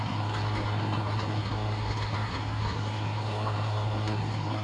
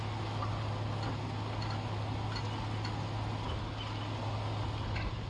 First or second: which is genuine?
second